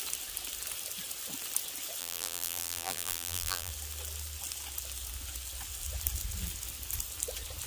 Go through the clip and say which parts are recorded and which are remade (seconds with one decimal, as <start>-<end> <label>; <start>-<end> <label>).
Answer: 0.0-2.0 recorded; 2.0-3.7 remade; 3.7-7.7 recorded